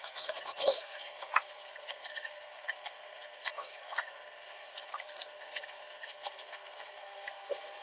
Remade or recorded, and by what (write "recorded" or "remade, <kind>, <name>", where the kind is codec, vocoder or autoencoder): remade, codec, SNAC